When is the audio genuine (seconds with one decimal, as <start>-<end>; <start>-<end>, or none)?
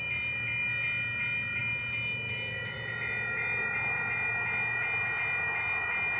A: 0.0-6.2